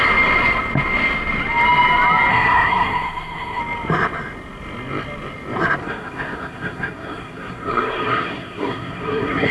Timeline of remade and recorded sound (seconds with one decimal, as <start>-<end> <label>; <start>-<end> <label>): 0.0-2.3 recorded; 2.3-3.6 remade; 3.6-5.8 recorded; 5.8-9.5 remade